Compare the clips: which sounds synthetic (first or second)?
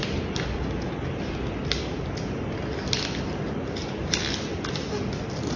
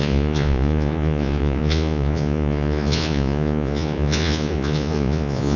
second